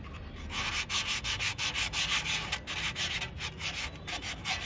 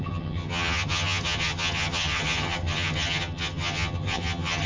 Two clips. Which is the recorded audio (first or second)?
first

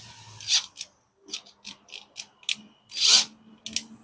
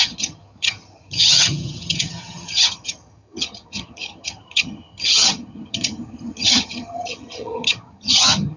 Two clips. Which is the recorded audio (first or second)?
first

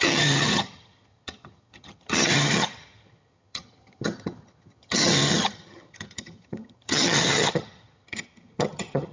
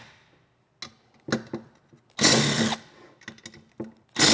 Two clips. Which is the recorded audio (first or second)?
second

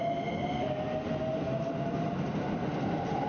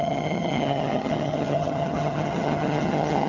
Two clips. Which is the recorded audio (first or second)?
first